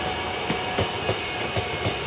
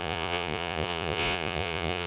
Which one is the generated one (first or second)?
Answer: second